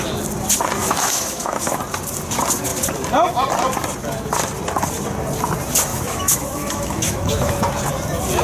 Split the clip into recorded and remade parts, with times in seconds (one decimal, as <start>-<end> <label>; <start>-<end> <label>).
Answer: 0.0-0.8 recorded; 0.8-1.8 remade; 1.8-5.9 recorded; 5.9-7.7 remade; 7.7-8.4 recorded